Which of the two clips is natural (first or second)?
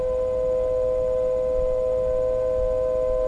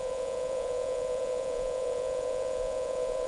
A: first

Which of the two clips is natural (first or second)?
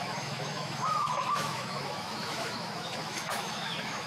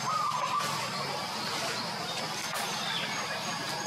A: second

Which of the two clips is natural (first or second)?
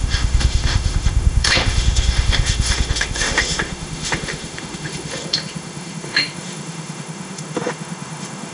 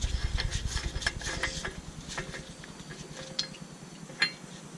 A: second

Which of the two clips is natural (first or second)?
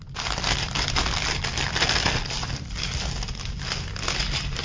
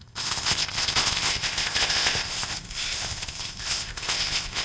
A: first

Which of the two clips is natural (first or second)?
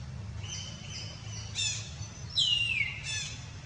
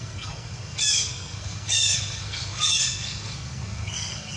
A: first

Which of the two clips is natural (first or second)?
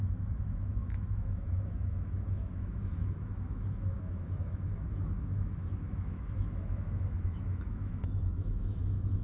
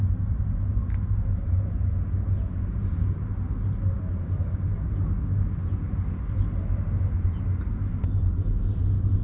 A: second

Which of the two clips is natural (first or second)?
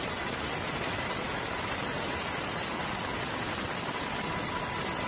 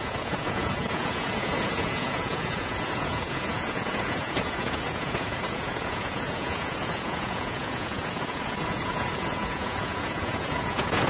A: first